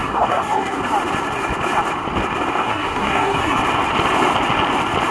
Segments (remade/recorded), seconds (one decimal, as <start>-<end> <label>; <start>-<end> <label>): 0.0-0.8 remade; 0.8-2.6 recorded; 2.6-3.6 remade; 3.6-5.1 recorded